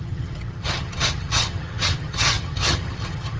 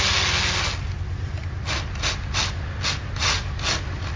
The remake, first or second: first